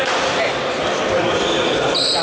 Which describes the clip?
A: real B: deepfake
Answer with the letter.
A